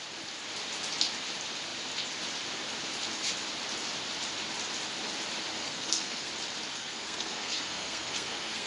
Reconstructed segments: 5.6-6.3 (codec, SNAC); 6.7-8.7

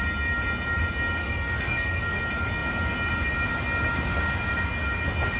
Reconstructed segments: 1.2-2.2 (codec, SNAC)

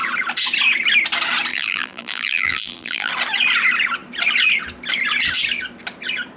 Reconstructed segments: 1.5-3.1 (vocoder, BigVGAN v2)

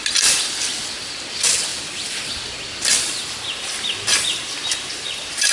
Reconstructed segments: none

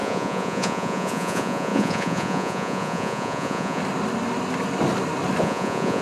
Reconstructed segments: 0.0-3.8 (vocoder, Vocos); 5.4-6.0

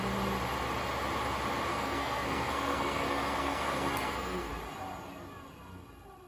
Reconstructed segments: 1.7-4.5 (codec, SNAC)

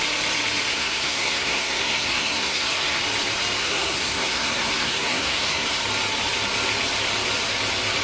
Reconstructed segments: 0.7-3.0 (codec, SNAC); 3.6-5.8